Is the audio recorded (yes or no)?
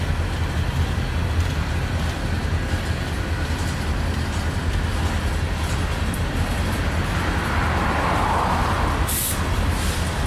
yes